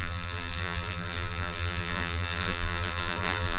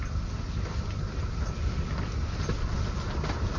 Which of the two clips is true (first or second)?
second